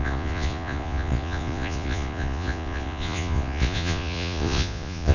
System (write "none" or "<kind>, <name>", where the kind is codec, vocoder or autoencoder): vocoder, Vocos